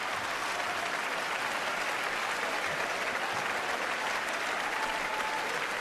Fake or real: real